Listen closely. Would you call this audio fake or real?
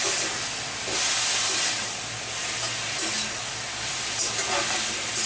real